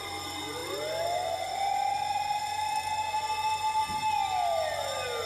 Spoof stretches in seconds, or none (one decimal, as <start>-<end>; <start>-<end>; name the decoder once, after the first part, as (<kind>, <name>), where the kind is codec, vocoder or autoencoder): none